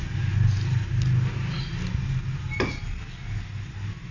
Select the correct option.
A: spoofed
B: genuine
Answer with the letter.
B